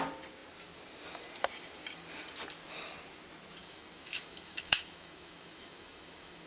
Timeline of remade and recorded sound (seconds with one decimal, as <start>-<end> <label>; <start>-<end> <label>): 0.0-3.6 recorded; 3.6-6.5 remade